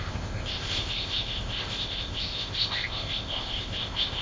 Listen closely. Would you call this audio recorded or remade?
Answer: remade